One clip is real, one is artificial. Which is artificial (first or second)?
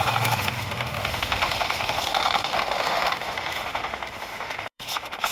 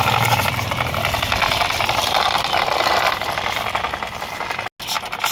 first